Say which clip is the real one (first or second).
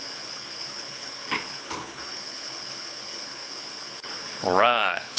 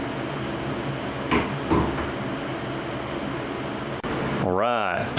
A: second